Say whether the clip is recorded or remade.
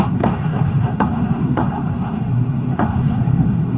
remade